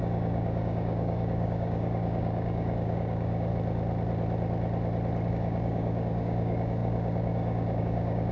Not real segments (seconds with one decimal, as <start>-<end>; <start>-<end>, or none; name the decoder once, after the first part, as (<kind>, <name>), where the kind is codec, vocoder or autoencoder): 0.0-3.5 (codec, DAC); 5.3-8.3